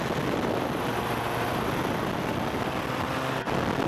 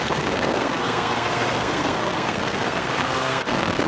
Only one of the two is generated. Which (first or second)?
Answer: second